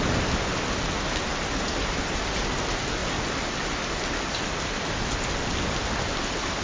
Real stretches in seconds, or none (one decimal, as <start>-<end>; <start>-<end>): 0.0-6.6